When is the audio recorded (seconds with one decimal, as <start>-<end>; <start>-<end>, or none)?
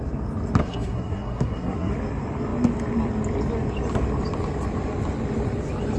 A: 0.0-0.6; 1.9-6.0